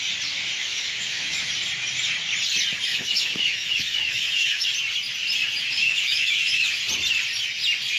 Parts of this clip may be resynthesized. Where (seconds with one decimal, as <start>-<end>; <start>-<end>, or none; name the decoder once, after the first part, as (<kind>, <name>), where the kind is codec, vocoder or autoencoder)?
0.6-1.5 (autoencoder, DAC-VAE); 2.9-4.7; 5.8-6.8

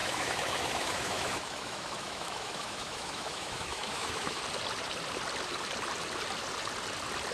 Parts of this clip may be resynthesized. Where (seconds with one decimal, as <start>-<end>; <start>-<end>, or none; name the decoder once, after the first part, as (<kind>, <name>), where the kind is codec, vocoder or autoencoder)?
0.0-4.4 (autoencoder, DAC-VAE)

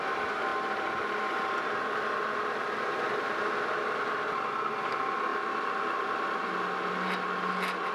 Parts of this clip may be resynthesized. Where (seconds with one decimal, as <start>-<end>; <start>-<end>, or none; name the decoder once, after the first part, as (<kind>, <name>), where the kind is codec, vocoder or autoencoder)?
none

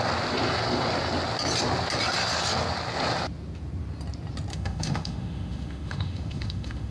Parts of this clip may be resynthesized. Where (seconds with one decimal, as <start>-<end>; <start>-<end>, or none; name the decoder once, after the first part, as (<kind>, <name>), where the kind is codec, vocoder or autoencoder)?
4.5-6.9 (autoencoder, DAC-VAE)

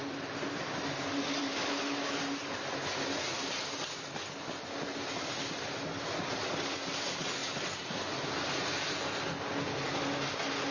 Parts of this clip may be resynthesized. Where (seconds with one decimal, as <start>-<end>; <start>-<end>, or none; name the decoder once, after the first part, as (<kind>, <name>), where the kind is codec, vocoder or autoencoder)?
1.4-2.2 (autoencoder, DAC-VAE)

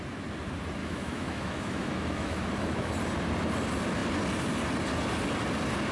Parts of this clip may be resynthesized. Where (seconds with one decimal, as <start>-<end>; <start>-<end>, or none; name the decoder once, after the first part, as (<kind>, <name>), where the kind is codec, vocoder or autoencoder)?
0.8-2.9 (autoencoder, DAC-VAE)